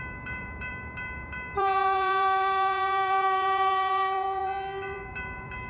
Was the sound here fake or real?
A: fake